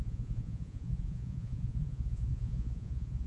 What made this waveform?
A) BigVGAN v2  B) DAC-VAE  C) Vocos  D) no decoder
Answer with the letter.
C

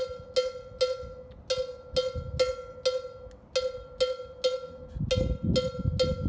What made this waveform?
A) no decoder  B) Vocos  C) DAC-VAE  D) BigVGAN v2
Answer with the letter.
A